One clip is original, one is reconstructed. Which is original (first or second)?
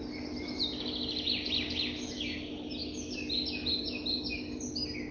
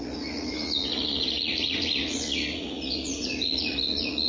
first